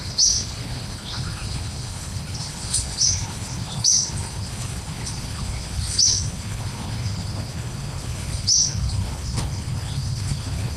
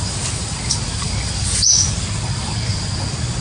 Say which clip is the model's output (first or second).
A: first